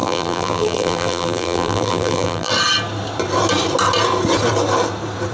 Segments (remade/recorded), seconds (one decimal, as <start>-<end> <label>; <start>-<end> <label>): 0.0-2.5 remade; 2.5-5.3 recorded